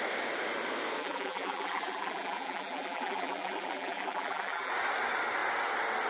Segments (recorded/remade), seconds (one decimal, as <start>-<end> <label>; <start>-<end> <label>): 0.0-1.0 recorded; 1.0-4.7 remade; 4.7-6.1 recorded